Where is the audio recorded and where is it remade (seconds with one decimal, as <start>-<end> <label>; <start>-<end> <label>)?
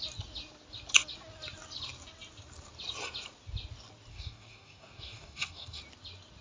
0.0-4.1 recorded; 4.1-5.8 remade; 5.8-6.4 recorded